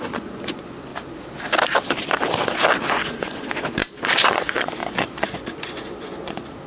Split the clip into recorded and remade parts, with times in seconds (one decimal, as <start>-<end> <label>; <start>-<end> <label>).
0.0-0.9 remade; 0.9-2.9 recorded; 2.9-3.8 remade; 3.8-4.3 recorded; 4.3-6.7 remade